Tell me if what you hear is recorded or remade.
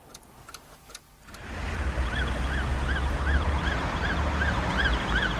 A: recorded